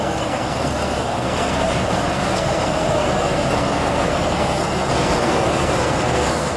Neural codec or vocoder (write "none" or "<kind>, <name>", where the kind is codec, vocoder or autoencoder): codec, SNAC